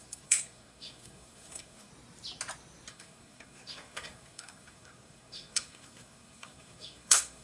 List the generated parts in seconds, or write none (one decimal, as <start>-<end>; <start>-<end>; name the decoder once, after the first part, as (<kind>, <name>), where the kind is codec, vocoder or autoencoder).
0.0-1.9 (codec, SNAC); 2.9-7.4